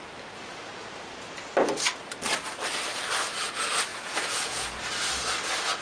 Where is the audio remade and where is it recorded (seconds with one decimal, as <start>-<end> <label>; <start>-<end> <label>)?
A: 0.0-3.9 recorded; 3.9-4.8 remade; 4.8-5.8 recorded